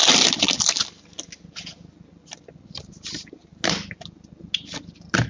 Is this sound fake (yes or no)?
no